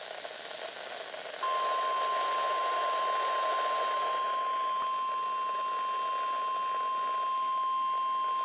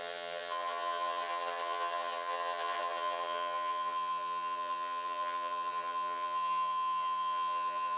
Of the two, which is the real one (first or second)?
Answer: first